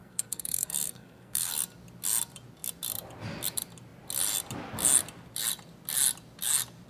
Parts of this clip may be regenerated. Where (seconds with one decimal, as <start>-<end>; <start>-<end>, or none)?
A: 0.0-1.5